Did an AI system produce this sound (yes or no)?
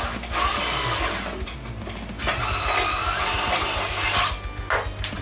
no